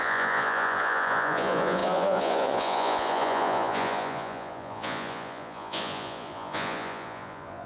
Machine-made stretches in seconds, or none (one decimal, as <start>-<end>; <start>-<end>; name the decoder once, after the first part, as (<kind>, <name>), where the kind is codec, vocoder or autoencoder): 0.0-7.7 (vocoder, Vocos)